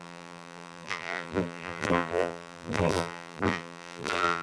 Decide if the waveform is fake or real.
fake